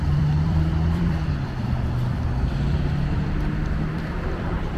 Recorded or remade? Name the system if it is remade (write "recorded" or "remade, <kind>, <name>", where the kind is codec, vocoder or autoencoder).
remade, vocoder, BigVGAN v2